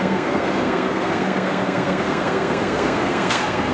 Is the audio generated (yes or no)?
yes